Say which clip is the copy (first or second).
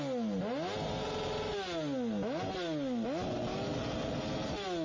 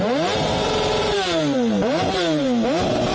second